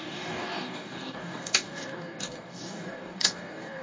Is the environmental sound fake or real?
fake